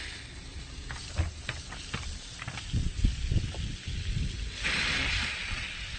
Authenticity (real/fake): real